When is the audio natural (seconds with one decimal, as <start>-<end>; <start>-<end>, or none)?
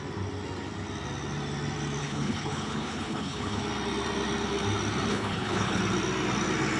0.0-2.0; 3.6-5.1; 5.8-6.8